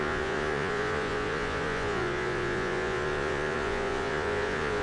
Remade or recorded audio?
remade